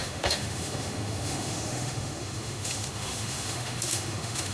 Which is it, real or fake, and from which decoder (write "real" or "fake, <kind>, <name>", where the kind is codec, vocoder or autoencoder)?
fake, autoencoder, DAC-VAE